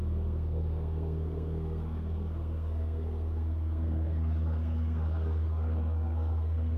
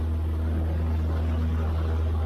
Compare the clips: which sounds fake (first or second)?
first